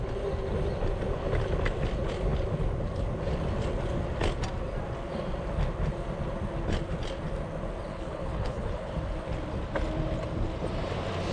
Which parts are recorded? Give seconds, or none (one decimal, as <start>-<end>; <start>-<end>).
0.0-7.9; 8.9-11.3